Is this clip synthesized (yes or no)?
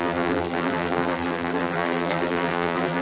yes